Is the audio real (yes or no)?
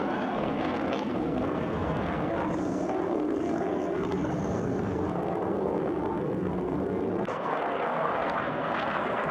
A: no